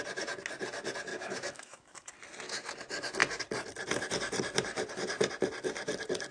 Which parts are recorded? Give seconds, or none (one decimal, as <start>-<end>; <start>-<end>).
0.0-1.1; 2.1-6.3